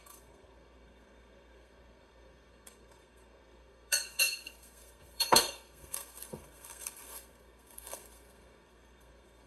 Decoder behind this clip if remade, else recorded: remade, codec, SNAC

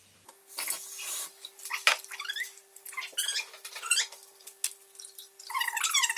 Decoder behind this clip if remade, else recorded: remade, vocoder, BigVGAN v2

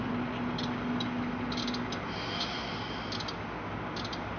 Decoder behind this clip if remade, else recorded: recorded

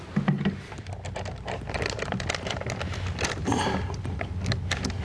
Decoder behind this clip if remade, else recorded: recorded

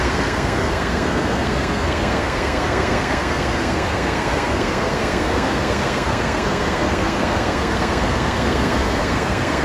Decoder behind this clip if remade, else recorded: remade, codec, SNAC